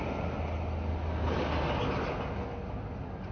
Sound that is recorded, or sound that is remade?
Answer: recorded